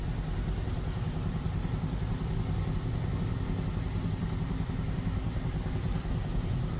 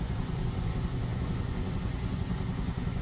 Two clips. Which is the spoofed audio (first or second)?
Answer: second